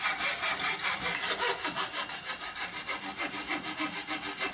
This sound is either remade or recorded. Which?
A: recorded